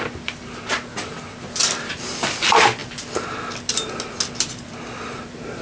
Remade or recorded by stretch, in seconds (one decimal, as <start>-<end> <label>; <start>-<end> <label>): 0.0-5.6 recorded